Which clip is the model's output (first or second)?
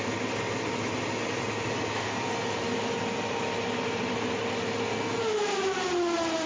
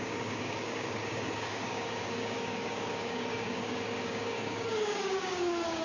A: second